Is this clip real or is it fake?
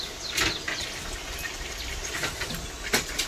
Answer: real